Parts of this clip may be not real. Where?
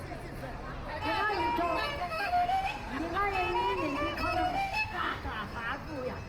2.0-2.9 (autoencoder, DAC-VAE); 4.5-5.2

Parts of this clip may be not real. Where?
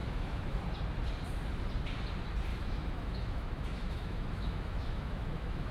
0.0-0.6 (autoencoder, DAC-VAE); 2.5-5.7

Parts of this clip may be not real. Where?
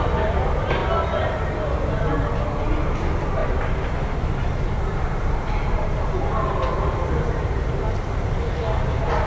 none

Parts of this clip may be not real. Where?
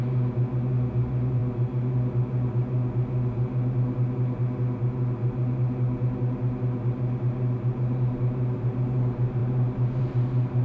none